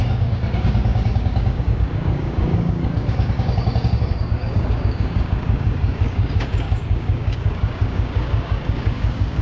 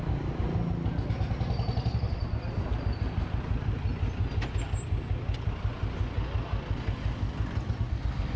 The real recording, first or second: second